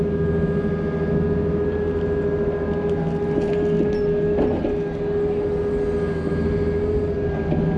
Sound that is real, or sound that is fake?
real